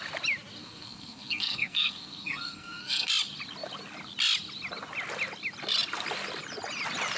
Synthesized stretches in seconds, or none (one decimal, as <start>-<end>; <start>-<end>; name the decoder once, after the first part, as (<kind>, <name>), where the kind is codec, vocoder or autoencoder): 0.6-3.1 (codec, SNAC)